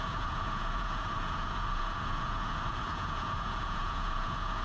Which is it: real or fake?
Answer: fake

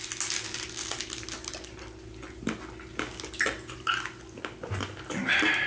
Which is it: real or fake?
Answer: real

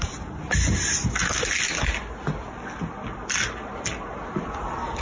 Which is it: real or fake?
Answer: real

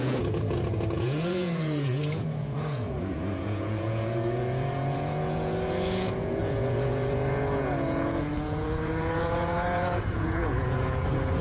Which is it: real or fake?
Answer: fake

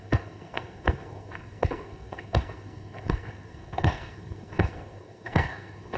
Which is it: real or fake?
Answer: fake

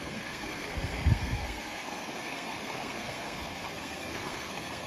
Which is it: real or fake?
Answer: fake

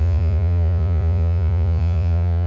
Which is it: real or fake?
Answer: fake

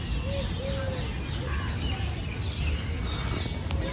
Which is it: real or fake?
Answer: real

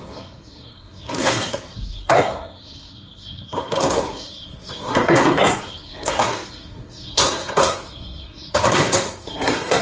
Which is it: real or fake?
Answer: fake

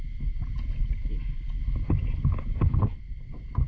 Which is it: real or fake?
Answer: real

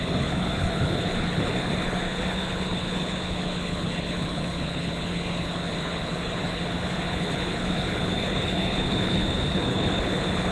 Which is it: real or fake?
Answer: fake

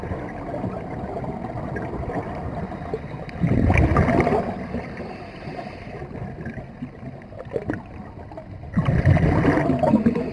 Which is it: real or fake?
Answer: real